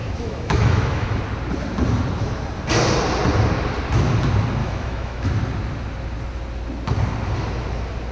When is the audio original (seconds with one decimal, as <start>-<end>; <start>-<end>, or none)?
1.2-4.6; 5.3-8.1